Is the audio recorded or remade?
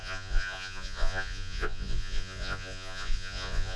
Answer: remade